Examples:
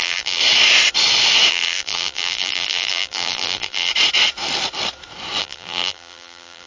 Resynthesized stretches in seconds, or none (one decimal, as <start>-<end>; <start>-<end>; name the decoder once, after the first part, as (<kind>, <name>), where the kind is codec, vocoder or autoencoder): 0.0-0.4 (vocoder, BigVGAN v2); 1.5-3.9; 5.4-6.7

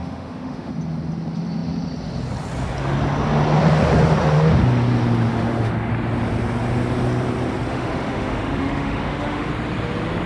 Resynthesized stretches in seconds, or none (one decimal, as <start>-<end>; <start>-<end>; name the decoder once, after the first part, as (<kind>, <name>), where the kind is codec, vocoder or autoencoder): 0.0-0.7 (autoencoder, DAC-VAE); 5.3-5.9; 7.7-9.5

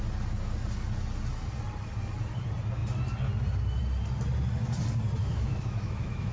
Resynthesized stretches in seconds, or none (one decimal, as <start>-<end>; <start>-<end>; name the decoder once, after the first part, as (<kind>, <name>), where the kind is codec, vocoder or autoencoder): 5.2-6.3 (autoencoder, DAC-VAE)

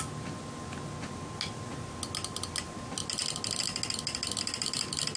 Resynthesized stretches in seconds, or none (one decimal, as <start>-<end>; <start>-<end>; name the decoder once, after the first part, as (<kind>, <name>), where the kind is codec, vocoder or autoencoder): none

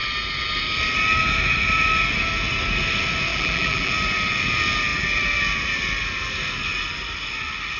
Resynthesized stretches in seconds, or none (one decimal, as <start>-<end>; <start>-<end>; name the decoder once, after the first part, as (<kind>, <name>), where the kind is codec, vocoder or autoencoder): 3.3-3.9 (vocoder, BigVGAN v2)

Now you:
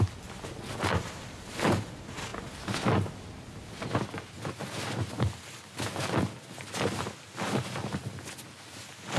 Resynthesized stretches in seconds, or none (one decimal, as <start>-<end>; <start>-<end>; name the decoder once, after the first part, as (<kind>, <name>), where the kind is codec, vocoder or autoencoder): none